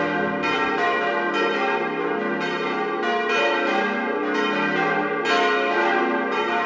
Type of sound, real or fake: real